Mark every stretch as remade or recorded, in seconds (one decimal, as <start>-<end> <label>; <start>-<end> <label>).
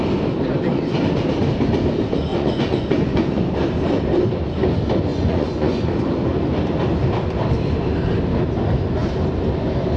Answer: 0.0-2.3 recorded; 2.3-3.4 remade; 3.4-5.1 recorded; 5.1-5.9 remade; 5.9-10.0 recorded